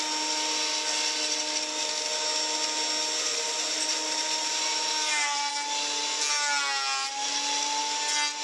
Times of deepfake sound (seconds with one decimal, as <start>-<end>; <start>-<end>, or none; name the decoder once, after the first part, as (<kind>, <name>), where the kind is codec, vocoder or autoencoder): 3.3-5.5 (vocoder, BigVGAN v2)